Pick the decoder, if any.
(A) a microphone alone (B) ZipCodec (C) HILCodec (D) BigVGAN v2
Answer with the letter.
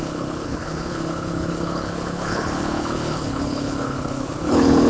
C